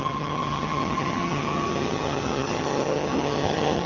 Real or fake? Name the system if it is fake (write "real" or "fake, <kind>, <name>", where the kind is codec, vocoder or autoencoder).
fake, vocoder, HiFi-GAN